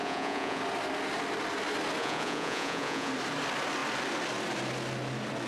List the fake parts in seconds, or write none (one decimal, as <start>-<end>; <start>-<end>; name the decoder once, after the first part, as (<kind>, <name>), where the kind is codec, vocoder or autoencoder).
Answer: 0.0-0.6 (vocoder, Vocos); 2.0-3.1

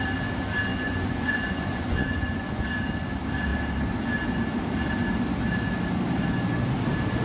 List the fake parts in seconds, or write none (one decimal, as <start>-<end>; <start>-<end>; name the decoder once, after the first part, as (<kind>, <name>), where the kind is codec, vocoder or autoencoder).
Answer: 0.7-2.6 (vocoder, Vocos)

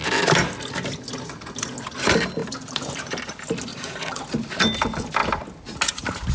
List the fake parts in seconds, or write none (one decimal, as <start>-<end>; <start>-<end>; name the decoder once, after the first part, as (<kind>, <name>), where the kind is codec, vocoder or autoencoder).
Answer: 3.7-4.2 (vocoder, Vocos)

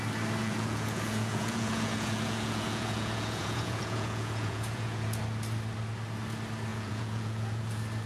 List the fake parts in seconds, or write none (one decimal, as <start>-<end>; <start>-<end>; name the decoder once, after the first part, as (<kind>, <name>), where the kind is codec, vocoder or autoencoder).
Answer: 0.4-5.2 (vocoder, Vocos); 6.7-7.6